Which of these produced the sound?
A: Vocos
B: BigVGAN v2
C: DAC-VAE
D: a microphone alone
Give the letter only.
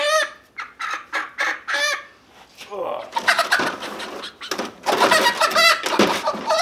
D